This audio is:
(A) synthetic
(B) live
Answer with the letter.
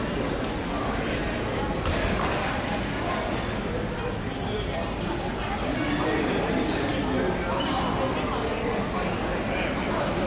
B